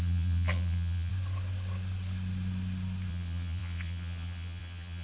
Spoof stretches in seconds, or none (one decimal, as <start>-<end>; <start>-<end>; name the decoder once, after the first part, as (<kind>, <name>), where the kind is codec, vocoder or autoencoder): 0.0-1.1 (vocoder, Vocos); 3.1-5.0